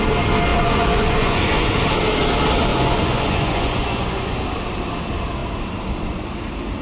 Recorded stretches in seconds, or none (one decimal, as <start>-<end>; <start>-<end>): 0.0-0.5; 1.7-2.7; 4.4-6.8